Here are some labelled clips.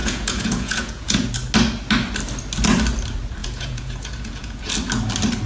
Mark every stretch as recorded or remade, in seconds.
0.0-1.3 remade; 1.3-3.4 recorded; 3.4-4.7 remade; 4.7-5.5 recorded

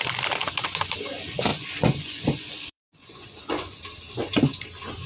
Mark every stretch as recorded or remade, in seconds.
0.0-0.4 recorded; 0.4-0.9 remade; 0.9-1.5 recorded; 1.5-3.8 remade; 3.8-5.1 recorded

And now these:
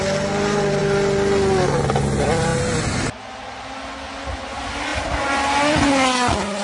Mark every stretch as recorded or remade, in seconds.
0.0-6.6 recorded

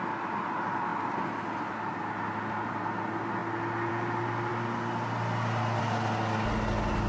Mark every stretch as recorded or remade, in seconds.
0.0-7.1 recorded

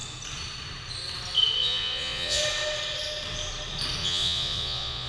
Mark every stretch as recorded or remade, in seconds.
0.0-1.6 recorded; 1.6-2.4 remade; 2.4-4.0 recorded; 4.0-5.1 remade